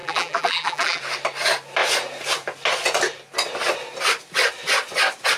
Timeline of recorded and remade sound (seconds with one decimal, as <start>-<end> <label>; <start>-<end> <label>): 0.0-1.0 remade; 1.0-5.4 recorded